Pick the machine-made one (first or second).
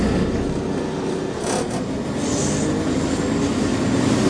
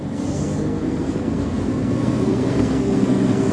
second